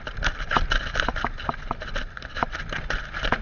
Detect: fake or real real